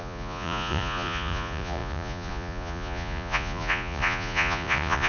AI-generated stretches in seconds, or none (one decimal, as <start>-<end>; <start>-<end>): 0.0-5.1

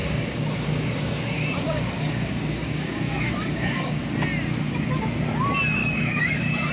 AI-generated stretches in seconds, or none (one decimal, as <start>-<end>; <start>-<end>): 0.0-4.0; 5.8-6.7

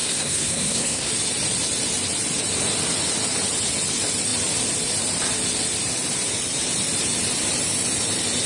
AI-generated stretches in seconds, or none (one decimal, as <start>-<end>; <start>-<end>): 0.0-1.1

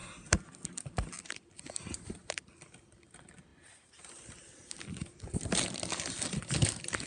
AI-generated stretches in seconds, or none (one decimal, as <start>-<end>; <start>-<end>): 0.0-2.8; 3.5-5.8